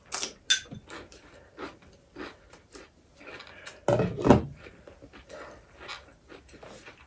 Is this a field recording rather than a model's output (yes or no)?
yes